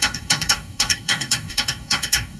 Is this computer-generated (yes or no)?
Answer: yes